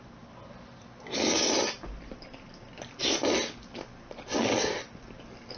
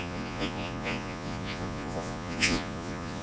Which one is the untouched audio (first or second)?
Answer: first